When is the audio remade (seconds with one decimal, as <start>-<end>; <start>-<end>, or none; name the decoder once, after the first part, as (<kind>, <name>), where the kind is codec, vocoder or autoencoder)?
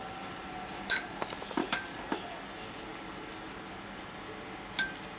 1.6-2.1 (codec, DAC)